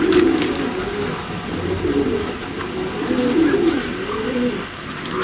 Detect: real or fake real